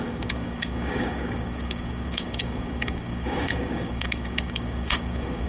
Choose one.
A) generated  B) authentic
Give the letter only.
A